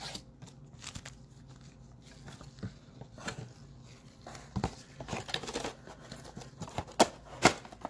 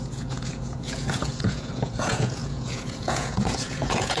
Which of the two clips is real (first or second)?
first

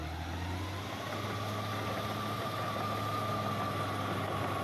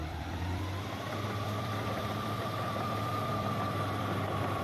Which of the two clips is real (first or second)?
first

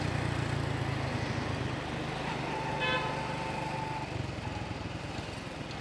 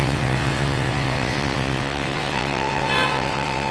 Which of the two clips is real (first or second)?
first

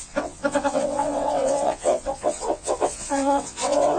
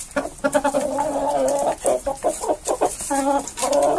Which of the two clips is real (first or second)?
second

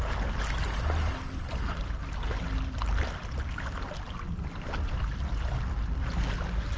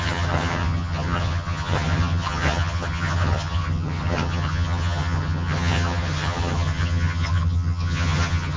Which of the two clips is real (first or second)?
first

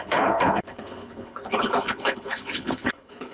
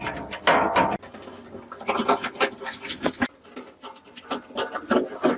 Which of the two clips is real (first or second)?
second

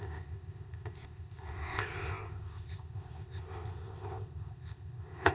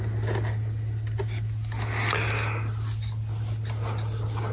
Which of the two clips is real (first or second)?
second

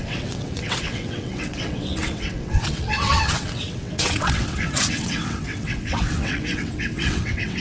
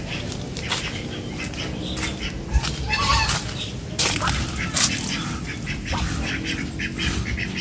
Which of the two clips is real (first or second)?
second